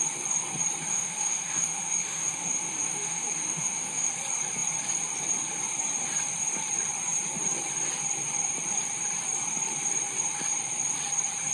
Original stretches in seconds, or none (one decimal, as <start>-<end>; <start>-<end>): 0.0-0.9; 4.1-11.5